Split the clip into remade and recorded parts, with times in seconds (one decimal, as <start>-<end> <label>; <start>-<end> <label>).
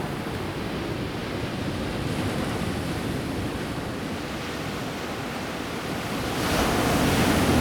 0.0-7.6 recorded